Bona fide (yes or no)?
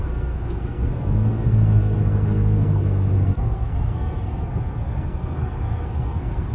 no